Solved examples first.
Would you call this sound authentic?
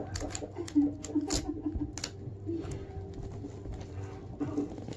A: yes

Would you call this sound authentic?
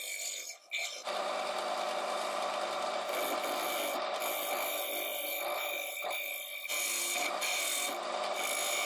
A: yes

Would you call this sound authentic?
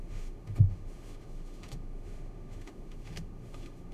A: no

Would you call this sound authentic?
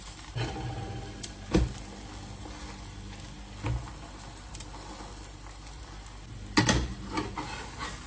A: yes